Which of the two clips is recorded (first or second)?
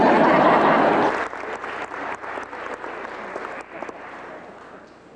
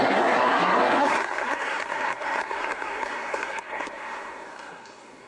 first